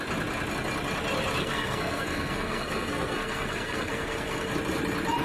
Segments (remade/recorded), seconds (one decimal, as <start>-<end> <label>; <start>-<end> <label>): 0.0-1.4 recorded; 1.4-4.5 remade; 4.5-5.2 recorded